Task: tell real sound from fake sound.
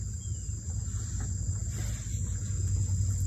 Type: real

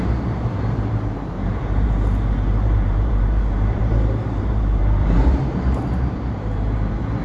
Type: fake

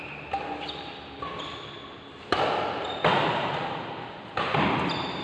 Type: real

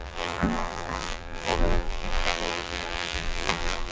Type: fake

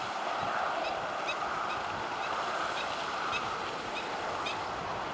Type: real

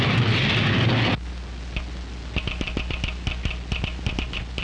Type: real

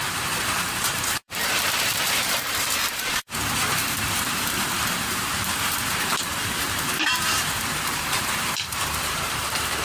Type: fake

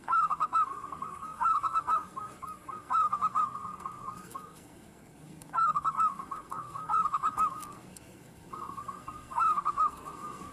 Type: fake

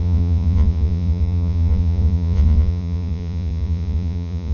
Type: fake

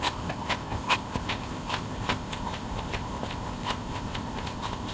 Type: fake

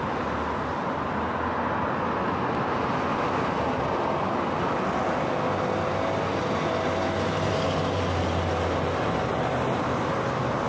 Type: real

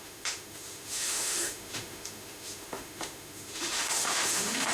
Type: fake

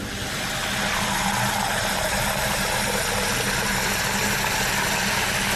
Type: real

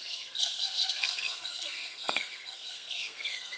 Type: fake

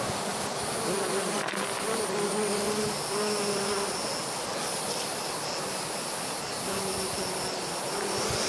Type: real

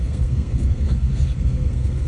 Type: fake